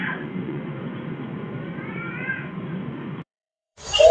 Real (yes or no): no